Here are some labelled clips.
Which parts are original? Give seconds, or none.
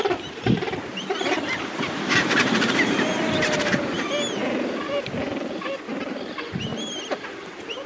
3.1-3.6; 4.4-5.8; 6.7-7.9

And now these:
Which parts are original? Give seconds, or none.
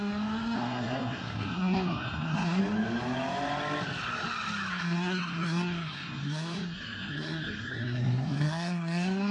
2.6-4.7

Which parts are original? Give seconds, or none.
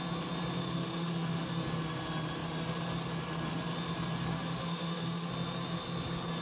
0.0-0.6; 1.5-4.3; 5.3-6.4